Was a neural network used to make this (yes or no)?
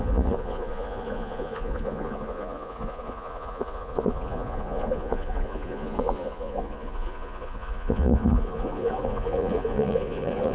yes